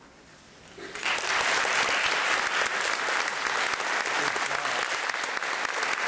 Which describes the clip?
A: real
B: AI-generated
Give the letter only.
A